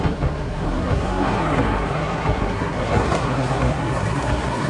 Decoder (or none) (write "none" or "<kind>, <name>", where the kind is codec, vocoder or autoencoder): codec, SNAC